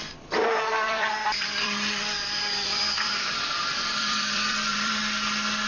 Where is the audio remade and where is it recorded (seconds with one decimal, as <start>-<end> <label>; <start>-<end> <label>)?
0.0-5.0 remade; 5.0-5.7 recorded